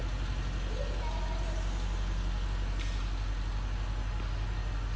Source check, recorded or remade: recorded